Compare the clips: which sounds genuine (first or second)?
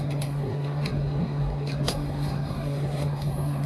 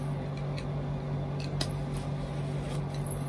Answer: second